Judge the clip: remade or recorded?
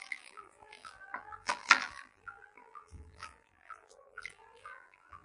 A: remade